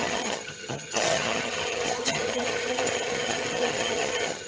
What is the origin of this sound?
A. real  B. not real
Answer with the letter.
B